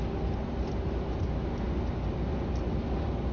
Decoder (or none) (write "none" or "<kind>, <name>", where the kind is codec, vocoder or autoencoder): none